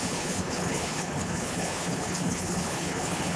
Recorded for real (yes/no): no